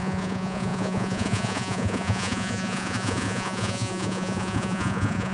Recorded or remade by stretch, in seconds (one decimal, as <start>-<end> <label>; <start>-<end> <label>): 0.0-5.3 remade